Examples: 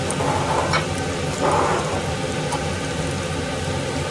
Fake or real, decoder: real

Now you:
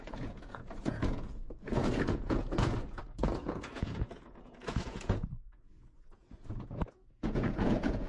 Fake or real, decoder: fake, vocoder, Vocos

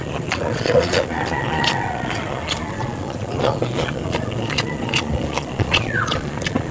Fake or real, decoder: fake, vocoder, Vocos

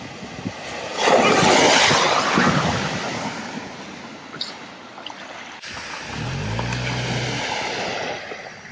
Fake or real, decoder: real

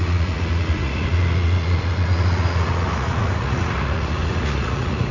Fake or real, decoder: fake, vocoder, Vocos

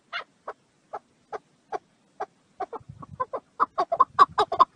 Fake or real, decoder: real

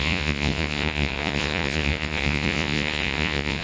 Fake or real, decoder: fake, vocoder, Vocos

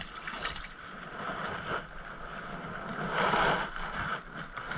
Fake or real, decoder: real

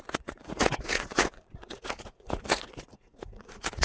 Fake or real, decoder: fake, vocoder, Vocos